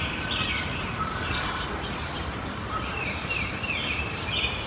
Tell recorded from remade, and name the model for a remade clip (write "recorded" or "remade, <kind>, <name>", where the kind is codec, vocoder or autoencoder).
remade, vocoder, BigVGAN v2